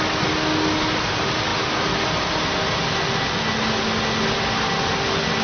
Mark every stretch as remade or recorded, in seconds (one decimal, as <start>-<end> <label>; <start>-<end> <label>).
0.0-5.4 recorded